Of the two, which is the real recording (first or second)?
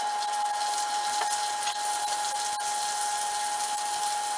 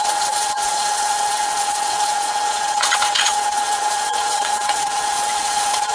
first